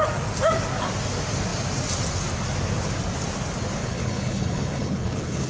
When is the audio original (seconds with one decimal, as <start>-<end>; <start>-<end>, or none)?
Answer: 0.0-3.8